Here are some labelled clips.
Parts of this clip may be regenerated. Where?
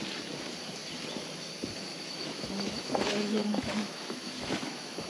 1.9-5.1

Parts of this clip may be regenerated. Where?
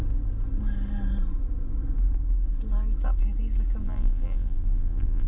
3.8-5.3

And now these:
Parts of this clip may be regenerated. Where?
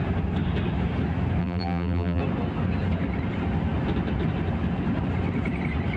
1.4-2.2